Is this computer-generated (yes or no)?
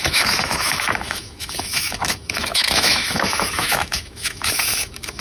yes